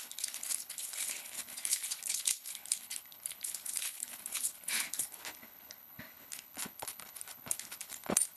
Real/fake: fake